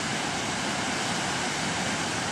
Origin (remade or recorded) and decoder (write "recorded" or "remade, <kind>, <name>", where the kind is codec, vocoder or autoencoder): recorded